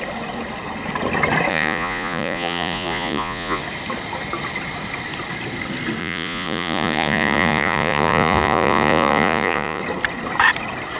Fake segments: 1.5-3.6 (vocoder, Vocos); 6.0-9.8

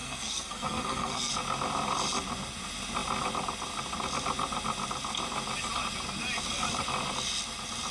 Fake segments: 0.0-1.3 (codec, SNAC)